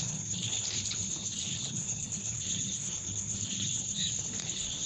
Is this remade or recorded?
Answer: remade